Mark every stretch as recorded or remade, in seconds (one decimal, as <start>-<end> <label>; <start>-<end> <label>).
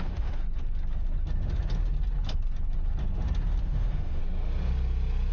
0.0-0.4 remade; 0.4-3.6 recorded; 3.6-4.2 remade; 4.2-5.3 recorded